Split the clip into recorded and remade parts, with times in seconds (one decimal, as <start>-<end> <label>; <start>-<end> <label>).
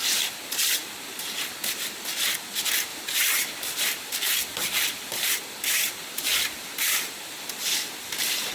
0.0-2.9 recorded; 2.9-5.3 remade; 5.3-6.0 recorded; 6.0-8.5 remade